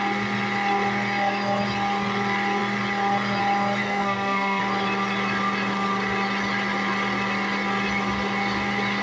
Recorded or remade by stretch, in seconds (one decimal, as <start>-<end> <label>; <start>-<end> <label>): 0.0-3.8 recorded; 3.8-4.6 remade; 4.6-9.0 recorded